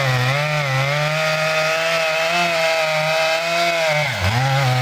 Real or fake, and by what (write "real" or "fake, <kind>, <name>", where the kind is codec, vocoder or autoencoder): real